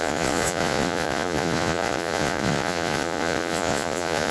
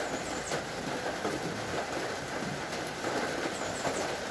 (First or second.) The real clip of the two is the second